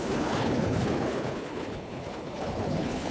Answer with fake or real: fake